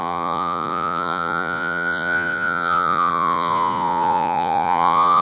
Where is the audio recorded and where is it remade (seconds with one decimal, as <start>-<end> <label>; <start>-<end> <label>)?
0.0-5.2 remade